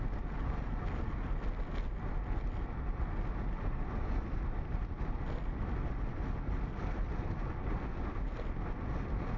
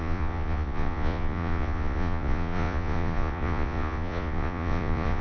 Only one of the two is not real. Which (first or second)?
second